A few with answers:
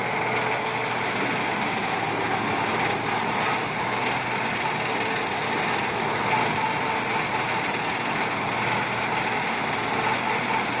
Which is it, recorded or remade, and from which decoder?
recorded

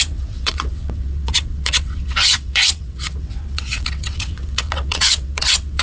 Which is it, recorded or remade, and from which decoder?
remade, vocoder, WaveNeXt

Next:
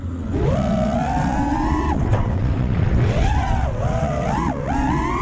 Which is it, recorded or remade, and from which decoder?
remade, vocoder, WaveNeXt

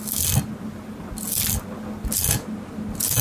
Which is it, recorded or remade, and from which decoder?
recorded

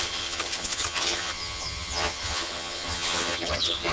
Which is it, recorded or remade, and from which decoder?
remade, vocoder, HiFi-GAN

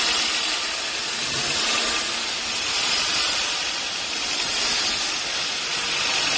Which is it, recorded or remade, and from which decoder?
recorded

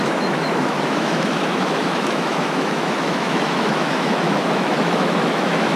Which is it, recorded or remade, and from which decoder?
remade, autoencoder, DAC-VAE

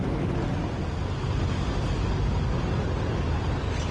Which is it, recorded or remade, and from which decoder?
recorded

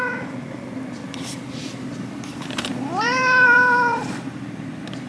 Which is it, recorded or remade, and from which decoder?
remade, vocoder, BigVGAN v2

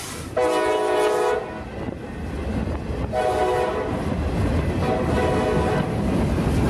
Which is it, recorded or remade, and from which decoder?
recorded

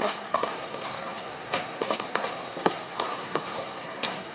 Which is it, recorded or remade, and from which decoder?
remade, codec, SNAC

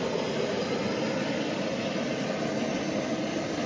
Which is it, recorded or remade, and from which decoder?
recorded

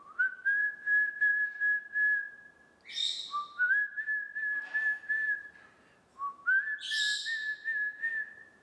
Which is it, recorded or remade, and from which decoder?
recorded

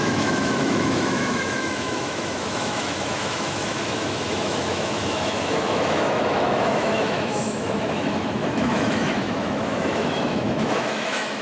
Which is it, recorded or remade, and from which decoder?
remade, autoencoder, DAC-VAE